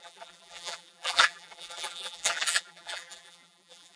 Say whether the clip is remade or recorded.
remade